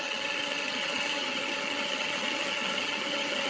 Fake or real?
fake